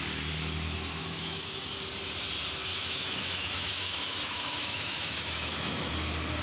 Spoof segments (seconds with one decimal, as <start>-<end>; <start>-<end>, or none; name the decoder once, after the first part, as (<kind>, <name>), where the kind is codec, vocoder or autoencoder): 1.0-1.5 (autoencoder, DAC-VAE); 2.7-5.9